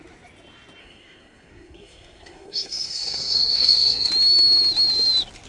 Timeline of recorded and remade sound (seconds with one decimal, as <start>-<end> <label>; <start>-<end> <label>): 0.0-0.8 recorded; 0.8-4.1 remade; 4.1-5.5 recorded